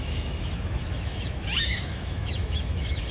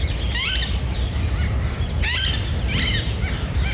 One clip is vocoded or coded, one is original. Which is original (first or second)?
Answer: second